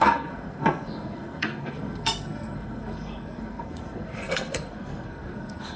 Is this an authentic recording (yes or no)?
no